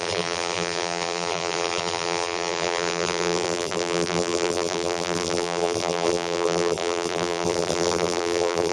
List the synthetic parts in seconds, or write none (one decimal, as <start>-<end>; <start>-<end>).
0.0-8.7